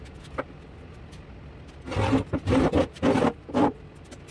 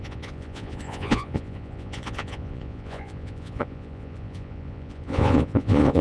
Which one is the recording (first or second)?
first